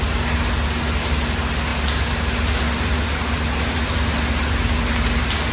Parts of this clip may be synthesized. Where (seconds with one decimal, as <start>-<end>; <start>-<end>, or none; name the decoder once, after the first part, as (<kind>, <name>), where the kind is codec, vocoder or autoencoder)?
none